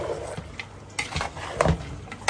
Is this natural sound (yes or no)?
yes